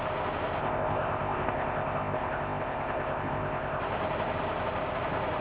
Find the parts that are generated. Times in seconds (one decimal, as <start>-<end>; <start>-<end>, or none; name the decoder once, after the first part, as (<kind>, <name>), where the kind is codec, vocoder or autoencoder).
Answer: 0.6-3.8 (codec, ZipCodec)